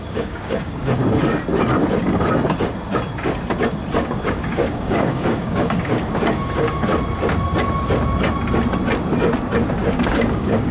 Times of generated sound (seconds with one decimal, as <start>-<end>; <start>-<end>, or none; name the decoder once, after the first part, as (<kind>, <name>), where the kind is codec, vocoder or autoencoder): 0.0-1.0 (codec, DAC); 4.0-6.9; 9.9-10.7